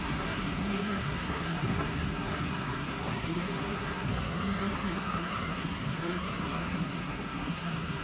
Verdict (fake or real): fake